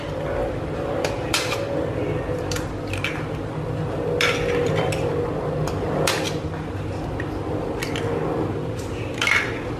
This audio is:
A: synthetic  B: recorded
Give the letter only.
B